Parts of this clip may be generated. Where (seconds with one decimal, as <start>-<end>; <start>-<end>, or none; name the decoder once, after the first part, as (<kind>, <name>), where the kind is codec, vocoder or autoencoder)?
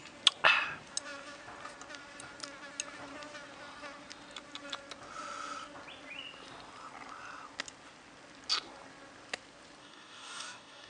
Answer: 9.8-10.9 (codec, DAC)